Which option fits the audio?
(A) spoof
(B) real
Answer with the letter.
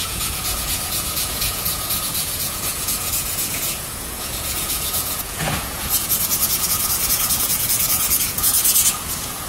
A